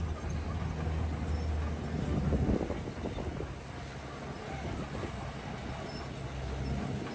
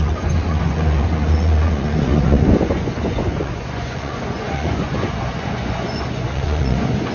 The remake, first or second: second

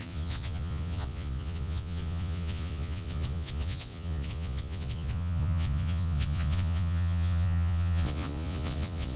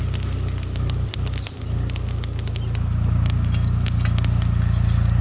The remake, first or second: first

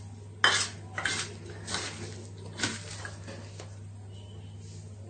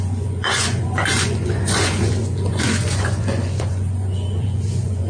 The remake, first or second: second